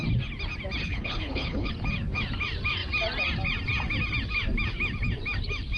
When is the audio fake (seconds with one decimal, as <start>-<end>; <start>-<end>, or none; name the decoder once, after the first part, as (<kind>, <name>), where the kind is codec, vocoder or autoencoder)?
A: 0.8-1.7 (codec, HILCodec)